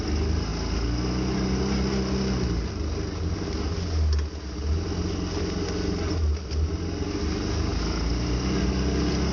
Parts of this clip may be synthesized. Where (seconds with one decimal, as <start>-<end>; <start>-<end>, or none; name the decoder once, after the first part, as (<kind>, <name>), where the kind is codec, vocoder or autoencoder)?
none